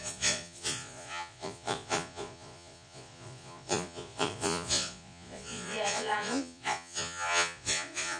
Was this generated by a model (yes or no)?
yes